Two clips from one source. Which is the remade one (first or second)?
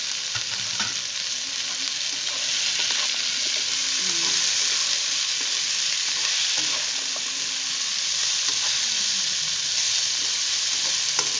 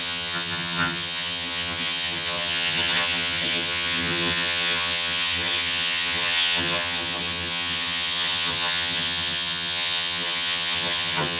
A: second